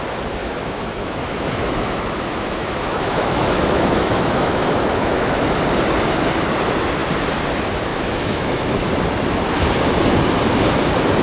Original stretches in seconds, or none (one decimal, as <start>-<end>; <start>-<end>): 0.0-0.4; 5.4-7.9; 8.9-11.2